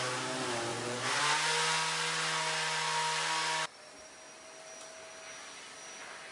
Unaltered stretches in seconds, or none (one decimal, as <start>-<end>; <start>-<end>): 0.0-0.7; 1.2-6.3